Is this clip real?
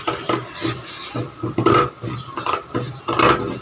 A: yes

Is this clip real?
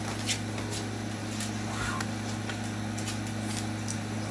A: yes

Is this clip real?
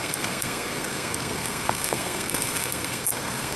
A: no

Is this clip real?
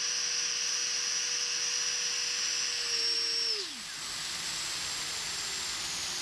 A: yes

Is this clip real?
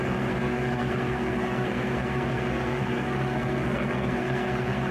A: no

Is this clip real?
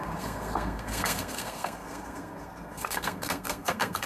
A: no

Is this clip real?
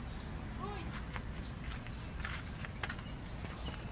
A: yes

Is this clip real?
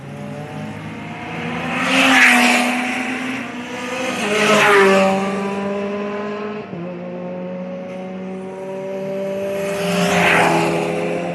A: yes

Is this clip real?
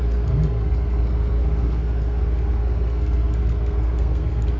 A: no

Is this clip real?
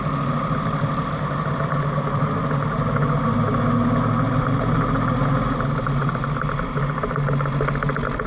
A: yes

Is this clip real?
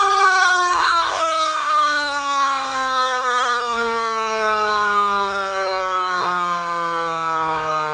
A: no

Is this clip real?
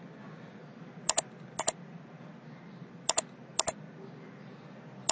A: yes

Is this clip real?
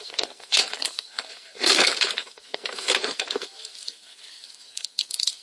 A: no